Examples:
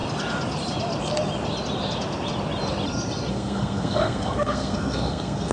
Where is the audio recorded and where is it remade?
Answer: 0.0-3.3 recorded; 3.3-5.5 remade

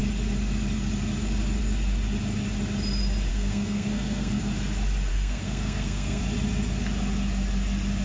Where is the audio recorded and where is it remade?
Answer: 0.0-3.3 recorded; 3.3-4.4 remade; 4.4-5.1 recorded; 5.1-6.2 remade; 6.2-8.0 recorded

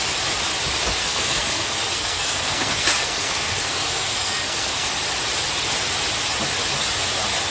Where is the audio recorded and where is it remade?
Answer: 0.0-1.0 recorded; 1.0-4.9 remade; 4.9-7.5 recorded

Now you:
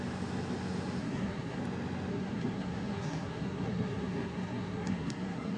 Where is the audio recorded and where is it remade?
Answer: 0.0-1.0 recorded; 1.0-1.6 remade; 1.6-2.1 recorded; 2.1-5.6 remade

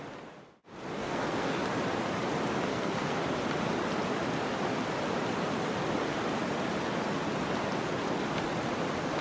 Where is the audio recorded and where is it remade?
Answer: 0.0-1.0 recorded; 1.0-1.6 remade; 1.6-2.7 recorded; 2.7-3.2 remade; 3.2-9.2 recorded